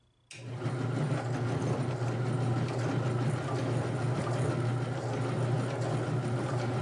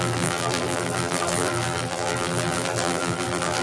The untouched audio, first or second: first